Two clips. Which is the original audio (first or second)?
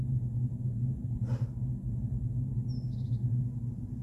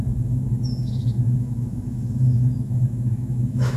first